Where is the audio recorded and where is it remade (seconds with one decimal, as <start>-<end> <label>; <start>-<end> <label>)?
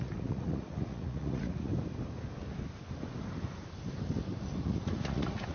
0.0-1.7 remade; 1.7-4.6 recorded; 4.6-5.5 remade